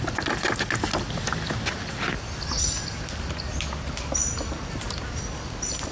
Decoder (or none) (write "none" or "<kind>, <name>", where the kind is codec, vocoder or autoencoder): none